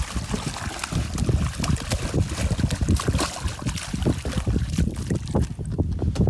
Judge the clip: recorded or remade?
recorded